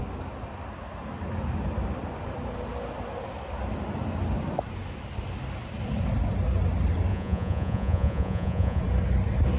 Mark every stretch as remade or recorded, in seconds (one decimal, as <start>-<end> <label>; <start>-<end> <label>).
0.0-7.1 recorded; 7.1-8.8 remade; 8.8-9.6 recorded